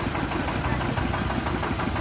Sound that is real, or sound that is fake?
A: real